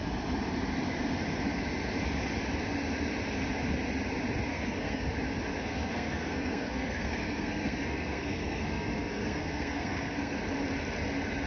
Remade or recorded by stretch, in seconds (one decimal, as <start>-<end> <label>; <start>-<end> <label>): 0.0-4.5 recorded; 4.5-5.1 remade; 5.1-5.6 recorded; 5.6-10.4 remade; 10.4-11.5 recorded